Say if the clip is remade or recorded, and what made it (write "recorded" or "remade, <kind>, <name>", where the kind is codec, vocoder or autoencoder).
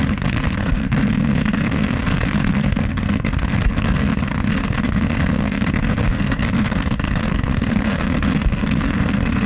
remade, codec, SNAC